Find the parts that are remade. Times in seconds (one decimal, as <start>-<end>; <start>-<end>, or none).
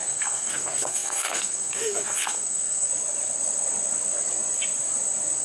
0.0-2.9